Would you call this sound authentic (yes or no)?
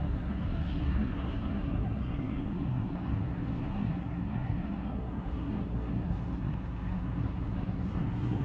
no